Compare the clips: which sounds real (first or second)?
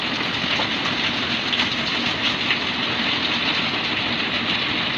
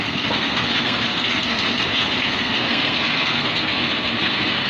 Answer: first